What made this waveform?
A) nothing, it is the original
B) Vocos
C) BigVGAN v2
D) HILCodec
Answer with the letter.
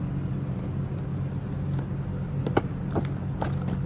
A